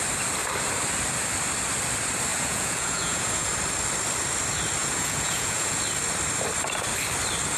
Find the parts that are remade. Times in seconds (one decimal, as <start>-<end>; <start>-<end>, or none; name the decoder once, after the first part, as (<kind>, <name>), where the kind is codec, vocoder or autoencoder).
2.3-3.5 (vocoder, Vocos); 4.8-5.8